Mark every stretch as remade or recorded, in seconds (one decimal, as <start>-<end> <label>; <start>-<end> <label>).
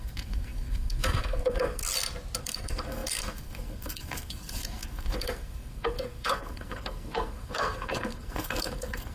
0.0-1.8 remade; 1.8-2.4 recorded; 2.4-9.1 remade